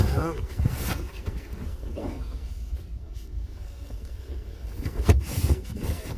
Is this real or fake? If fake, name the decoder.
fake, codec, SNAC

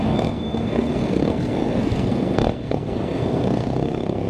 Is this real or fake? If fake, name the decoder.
fake, codec, SNAC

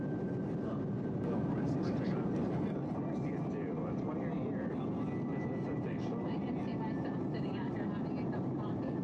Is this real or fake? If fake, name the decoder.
real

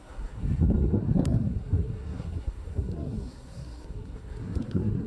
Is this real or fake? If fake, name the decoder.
fake, codec, SNAC